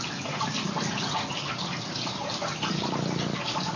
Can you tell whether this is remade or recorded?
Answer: recorded